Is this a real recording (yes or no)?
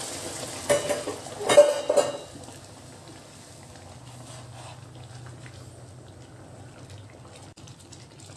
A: yes